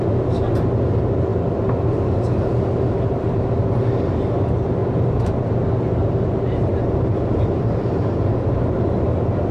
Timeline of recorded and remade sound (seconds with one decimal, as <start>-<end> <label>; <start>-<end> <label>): 0.0-9.5 recorded

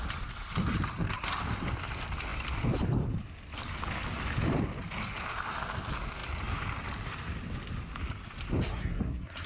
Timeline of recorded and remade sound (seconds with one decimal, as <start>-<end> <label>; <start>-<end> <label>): 0.0-8.7 recorded; 8.7-9.5 remade

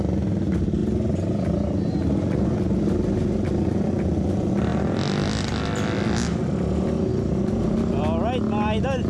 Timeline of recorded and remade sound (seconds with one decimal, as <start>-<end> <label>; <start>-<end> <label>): 0.0-9.1 recorded

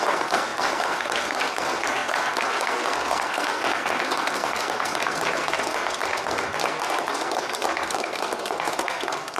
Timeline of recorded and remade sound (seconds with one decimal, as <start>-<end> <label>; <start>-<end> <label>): 0.0-9.4 remade

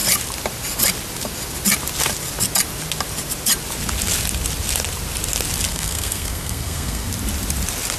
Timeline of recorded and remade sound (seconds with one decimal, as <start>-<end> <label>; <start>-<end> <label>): 0.0-5.7 recorded; 5.7-7.1 remade; 7.1-8.0 recorded

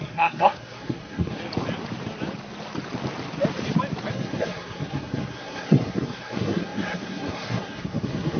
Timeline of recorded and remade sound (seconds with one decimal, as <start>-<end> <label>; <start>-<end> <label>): 0.0-1.4 remade; 1.4-4.1 recorded; 4.1-8.4 remade

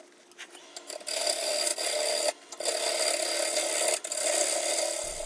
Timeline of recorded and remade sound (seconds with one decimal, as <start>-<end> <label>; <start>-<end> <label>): 0.0-5.3 recorded

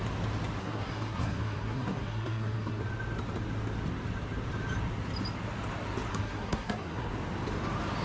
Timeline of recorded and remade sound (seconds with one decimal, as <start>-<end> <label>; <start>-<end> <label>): 0.0-0.6 recorded; 0.6-2.8 remade; 2.8-6.1 recorded; 6.1-7.1 remade; 7.1-8.0 recorded